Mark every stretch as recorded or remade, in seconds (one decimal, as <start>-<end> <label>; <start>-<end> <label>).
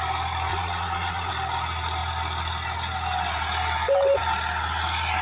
0.0-0.5 recorded; 0.5-1.3 remade; 1.3-5.2 recorded